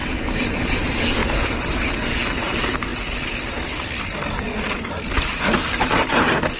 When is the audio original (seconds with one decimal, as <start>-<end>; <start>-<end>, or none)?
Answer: 0.0-1.2; 1.9-6.6